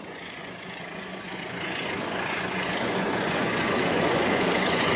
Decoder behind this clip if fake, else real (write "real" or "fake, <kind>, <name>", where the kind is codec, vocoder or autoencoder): fake, vocoder, Vocos